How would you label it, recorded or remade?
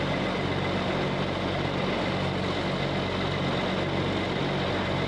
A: recorded